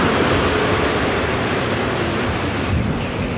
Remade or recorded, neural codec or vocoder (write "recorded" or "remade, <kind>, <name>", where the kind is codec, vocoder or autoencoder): remade, vocoder, BigVGAN v2